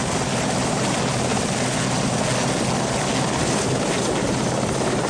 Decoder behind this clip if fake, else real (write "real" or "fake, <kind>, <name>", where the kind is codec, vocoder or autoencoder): real